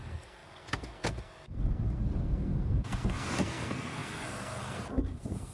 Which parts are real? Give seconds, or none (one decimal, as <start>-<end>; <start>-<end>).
none